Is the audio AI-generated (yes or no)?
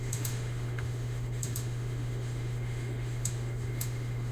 yes